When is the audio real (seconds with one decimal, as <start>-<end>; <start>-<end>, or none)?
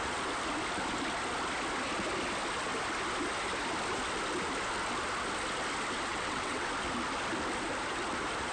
0.0-6.1; 6.7-8.5